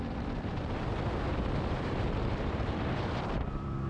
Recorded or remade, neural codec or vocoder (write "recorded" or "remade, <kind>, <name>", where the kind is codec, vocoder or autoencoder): remade, vocoder, BigVGAN v2